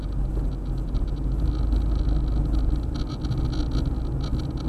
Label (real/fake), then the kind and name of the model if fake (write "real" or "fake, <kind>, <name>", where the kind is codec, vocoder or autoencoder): real